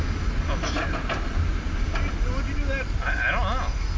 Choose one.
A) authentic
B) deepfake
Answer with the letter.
A